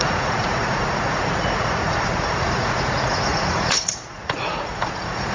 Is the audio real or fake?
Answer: fake